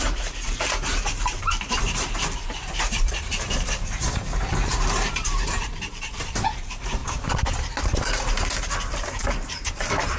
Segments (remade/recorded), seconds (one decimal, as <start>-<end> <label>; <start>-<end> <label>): 0.0-7.0 remade; 7.0-7.8 recorded; 7.8-10.2 remade